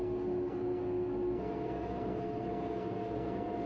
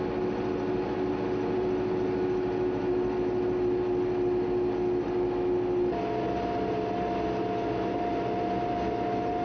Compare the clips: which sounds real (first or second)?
second